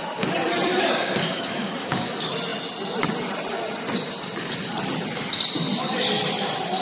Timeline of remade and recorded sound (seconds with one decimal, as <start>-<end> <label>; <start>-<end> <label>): 0.0-0.7 recorded; 0.7-2.1 remade; 2.1-6.8 recorded